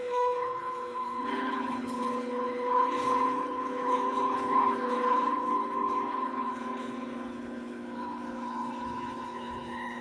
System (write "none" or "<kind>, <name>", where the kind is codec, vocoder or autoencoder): codec, HILCodec